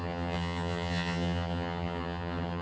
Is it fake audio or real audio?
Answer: fake